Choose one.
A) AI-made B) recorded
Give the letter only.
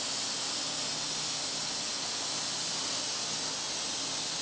B